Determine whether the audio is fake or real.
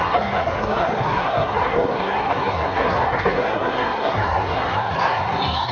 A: fake